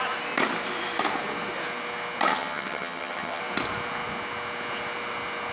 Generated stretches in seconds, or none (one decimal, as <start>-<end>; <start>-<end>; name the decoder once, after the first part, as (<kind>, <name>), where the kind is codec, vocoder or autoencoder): 2.3-3.4 (vocoder, HiFi-GAN)